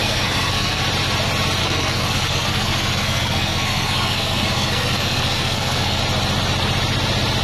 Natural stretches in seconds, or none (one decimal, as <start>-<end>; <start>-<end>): 0.8-1.6; 6.0-7.4